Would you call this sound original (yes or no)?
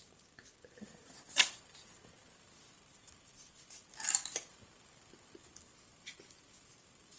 yes